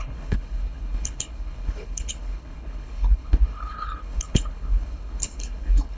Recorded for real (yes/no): no